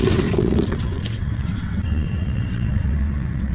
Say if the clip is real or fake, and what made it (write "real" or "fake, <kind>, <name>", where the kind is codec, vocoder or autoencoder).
fake, vocoder, WaveNeXt